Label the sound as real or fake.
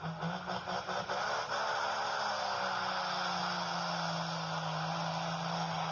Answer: real